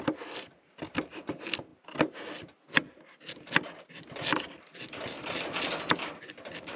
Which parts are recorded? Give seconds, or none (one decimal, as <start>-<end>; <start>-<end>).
0.0-6.8